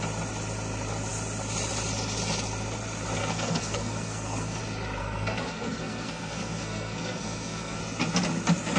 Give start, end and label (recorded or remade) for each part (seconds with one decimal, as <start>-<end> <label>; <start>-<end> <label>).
0.0-3.2 recorded; 3.2-4.6 remade; 4.6-5.0 recorded; 5.0-7.8 remade; 7.8-8.8 recorded

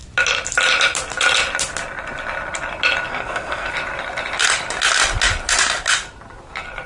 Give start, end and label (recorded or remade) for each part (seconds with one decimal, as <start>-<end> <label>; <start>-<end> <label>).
0.0-3.1 recorded; 3.1-3.7 remade; 3.7-6.9 recorded

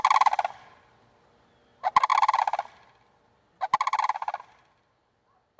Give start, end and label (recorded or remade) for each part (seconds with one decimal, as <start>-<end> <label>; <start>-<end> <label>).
0.0-5.6 recorded

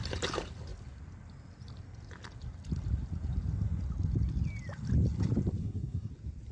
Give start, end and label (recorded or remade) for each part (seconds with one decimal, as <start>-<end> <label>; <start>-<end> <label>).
0.0-5.6 recorded; 5.6-6.1 remade; 6.1-6.5 recorded

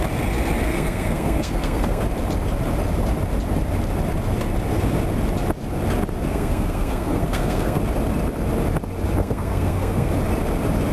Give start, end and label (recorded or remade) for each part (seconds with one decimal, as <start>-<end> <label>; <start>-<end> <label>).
0.0-0.6 recorded; 0.6-2.0 remade; 2.0-6.3 recorded; 6.3-7.8 remade; 7.8-9.2 recorded; 9.2-10.1 remade; 10.1-10.9 recorded

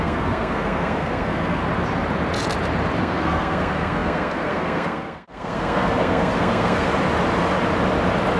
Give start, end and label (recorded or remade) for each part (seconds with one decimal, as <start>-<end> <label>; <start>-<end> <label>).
0.0-1.6 remade; 1.6-3.0 recorded; 3.0-6.9 remade; 6.9-8.4 recorded

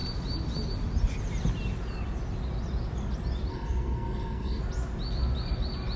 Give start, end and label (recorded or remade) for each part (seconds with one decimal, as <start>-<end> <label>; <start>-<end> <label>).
0.0-3.5 recorded; 3.5-4.6 remade; 4.6-6.0 recorded